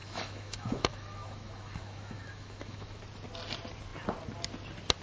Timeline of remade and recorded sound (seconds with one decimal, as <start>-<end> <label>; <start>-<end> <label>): 0.0-3.0 remade; 3.0-5.0 recorded